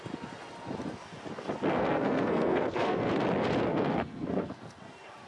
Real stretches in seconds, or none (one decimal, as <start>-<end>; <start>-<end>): 0.0-1.7; 3.1-3.7; 4.8-5.3